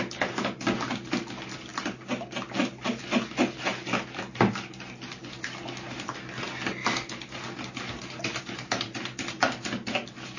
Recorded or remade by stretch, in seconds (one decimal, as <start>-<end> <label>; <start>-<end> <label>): 0.0-10.4 recorded